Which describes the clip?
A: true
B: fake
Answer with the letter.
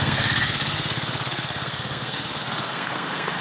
B